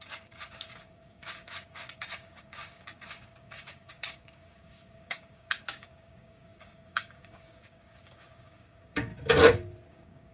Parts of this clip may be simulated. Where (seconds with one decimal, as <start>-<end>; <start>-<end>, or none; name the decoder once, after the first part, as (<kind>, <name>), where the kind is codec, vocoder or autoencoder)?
0.0-9.1 (codec, DAC); 9.9-10.3